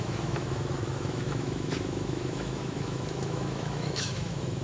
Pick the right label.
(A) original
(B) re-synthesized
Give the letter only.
B